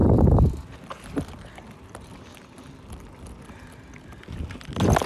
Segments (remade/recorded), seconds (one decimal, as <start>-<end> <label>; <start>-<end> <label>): 0.0-5.1 recorded